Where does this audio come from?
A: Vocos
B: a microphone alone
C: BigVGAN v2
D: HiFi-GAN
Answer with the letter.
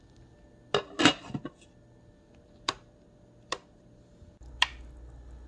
B